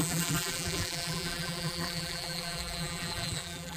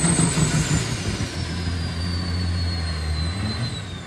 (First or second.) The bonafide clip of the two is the second